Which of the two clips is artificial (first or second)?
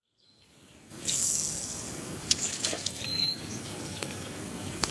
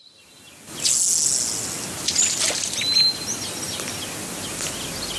first